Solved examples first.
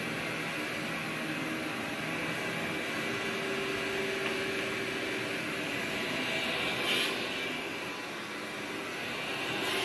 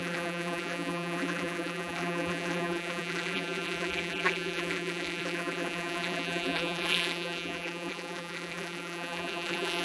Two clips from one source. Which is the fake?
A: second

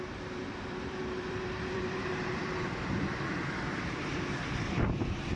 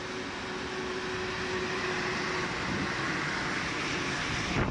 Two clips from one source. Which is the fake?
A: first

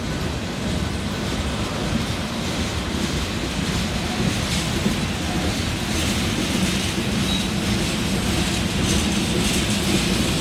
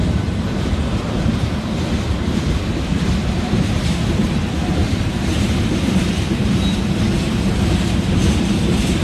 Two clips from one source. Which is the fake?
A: second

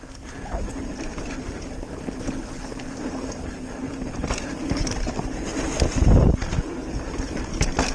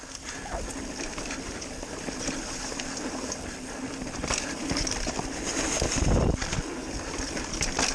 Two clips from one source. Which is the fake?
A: second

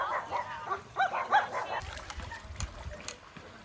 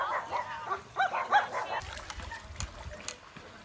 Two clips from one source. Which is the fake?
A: first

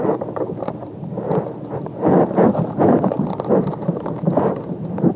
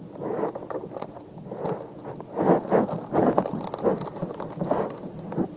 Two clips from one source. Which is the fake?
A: first